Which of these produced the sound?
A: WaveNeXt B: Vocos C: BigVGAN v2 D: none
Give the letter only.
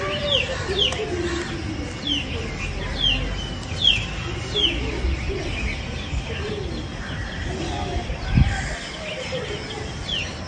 D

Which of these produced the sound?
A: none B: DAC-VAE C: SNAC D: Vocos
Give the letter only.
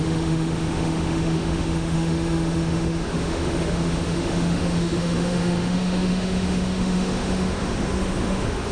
B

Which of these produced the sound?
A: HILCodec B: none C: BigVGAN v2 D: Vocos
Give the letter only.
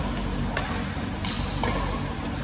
B